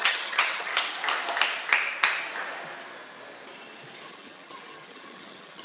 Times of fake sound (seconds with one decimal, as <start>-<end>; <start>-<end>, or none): 0.0-0.7; 4.1-5.6